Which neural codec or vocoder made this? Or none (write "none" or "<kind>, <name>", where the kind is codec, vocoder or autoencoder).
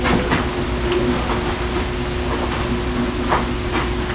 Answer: none